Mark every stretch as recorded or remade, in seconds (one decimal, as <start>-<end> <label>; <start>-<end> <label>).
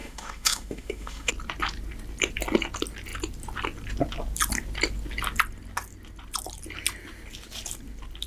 0.0-1.3 remade; 1.3-8.3 recorded